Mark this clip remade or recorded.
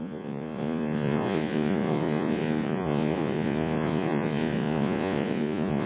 remade